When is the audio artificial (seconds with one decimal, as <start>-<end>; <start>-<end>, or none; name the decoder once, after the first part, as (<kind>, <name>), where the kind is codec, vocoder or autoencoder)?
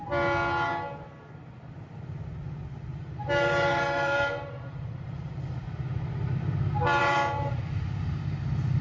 2.9-5.6 (vocoder, BigVGAN v2); 7.0-7.6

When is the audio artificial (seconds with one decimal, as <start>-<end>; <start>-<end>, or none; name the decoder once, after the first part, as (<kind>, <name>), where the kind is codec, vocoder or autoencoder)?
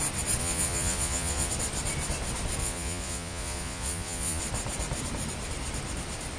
0.4-1.5 (vocoder, Vocos); 2.6-4.4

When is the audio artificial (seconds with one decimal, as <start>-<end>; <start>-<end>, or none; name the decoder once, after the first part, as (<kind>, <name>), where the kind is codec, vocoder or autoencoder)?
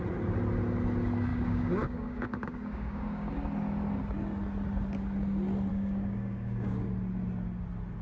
1.3-3.3 (codec, DAC); 5.7-6.8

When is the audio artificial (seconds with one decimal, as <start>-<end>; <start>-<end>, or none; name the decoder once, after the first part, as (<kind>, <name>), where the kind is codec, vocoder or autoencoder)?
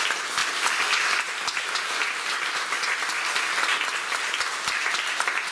none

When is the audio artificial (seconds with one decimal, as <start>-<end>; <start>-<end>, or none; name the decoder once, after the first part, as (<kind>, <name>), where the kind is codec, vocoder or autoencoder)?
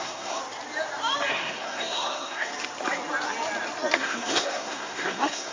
0.0-0.4 (codec, SNAC); 1.3-2.5; 3.9-5.5